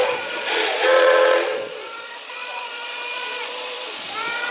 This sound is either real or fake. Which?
fake